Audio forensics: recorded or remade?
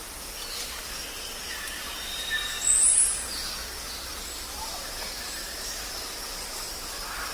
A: recorded